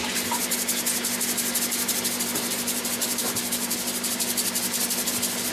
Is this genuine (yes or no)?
yes